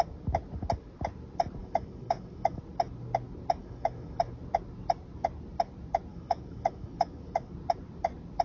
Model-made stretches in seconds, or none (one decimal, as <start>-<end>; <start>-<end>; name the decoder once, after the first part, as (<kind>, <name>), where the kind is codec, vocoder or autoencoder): 1.6-2.6 (autoencoder, DAC-VAE); 3.6-4.2; 6.1-7.5